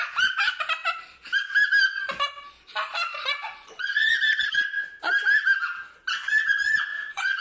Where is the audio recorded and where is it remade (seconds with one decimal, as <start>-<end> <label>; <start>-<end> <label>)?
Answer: 0.0-3.4 recorded; 3.4-4.2 remade; 4.2-6.9 recorded; 6.9-7.4 remade